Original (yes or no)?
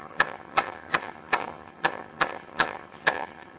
no